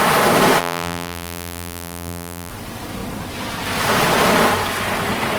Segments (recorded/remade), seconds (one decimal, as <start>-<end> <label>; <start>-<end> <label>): 0.0-0.6 recorded; 0.6-2.5 remade; 2.5-5.4 recorded